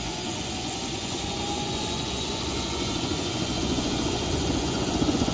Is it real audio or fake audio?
fake